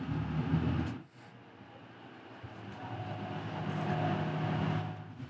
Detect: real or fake real